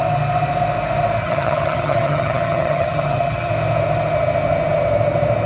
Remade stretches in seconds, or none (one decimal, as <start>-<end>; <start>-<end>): 1.2-3.5